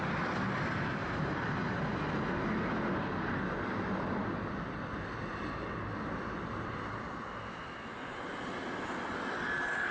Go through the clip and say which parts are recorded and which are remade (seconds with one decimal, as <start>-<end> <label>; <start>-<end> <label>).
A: 0.0-1.0 recorded; 1.0-1.8 remade; 1.8-5.3 recorded; 5.3-6.9 remade; 6.9-9.9 recorded